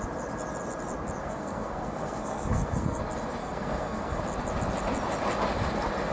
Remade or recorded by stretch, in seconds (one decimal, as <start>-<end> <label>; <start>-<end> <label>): 0.0-1.2 recorded; 1.2-3.0 remade; 3.0-3.4 recorded; 3.4-4.2 remade; 4.2-6.1 recorded